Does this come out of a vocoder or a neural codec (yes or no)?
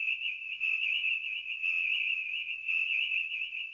yes